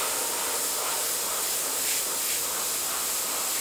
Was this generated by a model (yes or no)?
no